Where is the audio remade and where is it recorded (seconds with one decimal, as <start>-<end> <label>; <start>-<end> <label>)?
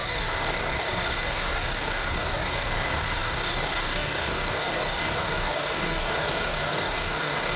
0.0-7.6 remade